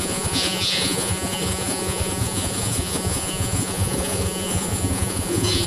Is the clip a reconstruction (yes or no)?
yes